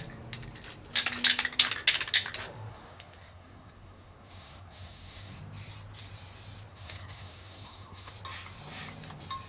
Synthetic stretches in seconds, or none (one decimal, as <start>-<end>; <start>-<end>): 2.7-5.4; 6.7-8.1